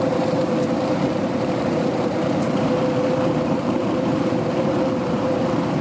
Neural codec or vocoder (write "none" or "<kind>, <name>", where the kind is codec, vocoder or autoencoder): vocoder, BigVGAN v2